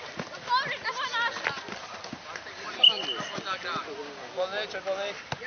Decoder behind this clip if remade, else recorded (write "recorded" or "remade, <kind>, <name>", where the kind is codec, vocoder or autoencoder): recorded